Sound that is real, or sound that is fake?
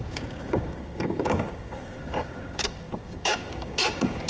fake